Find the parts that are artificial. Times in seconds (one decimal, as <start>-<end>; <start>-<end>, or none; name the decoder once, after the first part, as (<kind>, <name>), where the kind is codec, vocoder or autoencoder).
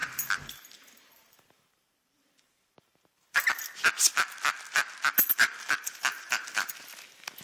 0.0-3.6 (vocoder, BigVGAN v2); 5.3-6.7